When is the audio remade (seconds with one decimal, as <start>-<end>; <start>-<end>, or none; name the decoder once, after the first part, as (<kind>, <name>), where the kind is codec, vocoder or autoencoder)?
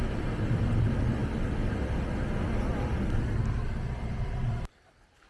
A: 0.0-1.2 (vocoder, BigVGAN v2); 3.4-5.3